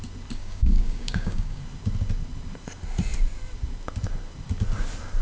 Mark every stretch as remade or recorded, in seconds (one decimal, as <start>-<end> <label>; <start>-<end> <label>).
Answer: 0.0-0.4 recorded; 0.4-1.6 remade; 1.6-5.2 recorded

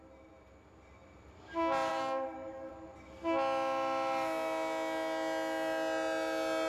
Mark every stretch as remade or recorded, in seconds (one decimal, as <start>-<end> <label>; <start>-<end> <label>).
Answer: 0.0-1.9 recorded; 1.9-2.7 remade; 2.7-6.7 recorded